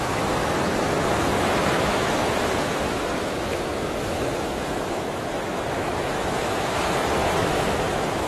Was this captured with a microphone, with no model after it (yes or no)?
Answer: no